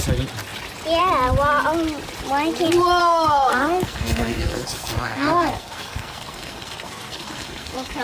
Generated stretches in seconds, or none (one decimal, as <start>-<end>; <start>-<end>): 3.0-8.0